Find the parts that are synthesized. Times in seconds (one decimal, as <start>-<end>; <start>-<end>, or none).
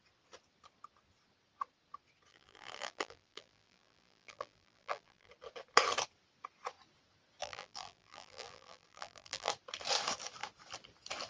2.3-5.3; 7.4-9.5